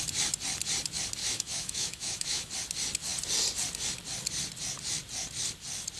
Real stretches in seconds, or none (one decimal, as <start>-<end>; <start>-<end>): 0.0-1.2; 2.5-6.0